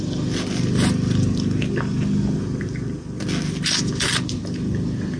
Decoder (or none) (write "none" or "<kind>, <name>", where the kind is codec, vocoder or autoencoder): none